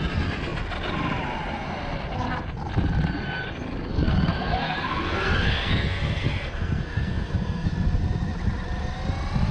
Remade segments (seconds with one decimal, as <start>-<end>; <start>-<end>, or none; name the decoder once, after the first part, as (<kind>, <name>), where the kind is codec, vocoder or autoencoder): 3.9-7.7 (codec, SNAC)